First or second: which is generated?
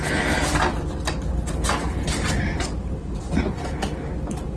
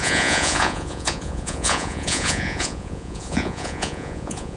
second